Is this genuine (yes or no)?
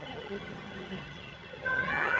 no